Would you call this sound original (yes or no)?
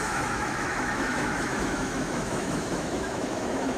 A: no